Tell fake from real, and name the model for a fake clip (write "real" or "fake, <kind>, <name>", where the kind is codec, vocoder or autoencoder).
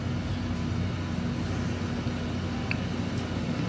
real